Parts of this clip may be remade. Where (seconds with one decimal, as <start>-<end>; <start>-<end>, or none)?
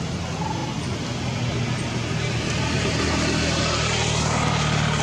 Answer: none